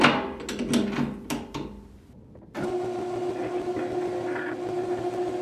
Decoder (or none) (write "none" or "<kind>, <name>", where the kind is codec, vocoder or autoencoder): none